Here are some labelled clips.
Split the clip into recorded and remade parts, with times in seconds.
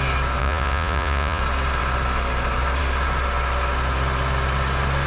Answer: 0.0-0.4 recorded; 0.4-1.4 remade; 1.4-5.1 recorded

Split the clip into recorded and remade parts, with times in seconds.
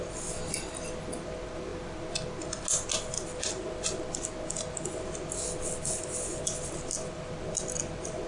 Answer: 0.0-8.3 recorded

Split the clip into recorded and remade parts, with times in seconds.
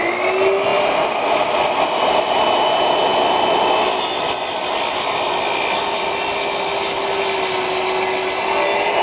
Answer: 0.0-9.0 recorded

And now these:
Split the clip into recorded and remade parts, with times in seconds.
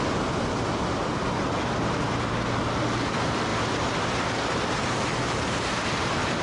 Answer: 0.0-3.5 recorded; 3.5-6.4 remade